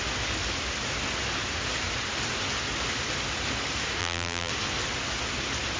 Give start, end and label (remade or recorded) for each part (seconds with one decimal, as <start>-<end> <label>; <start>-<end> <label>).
0.0-4.0 recorded; 4.0-4.5 remade; 4.5-5.8 recorded